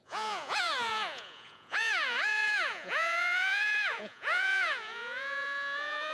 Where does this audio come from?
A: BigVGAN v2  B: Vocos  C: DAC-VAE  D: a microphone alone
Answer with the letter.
B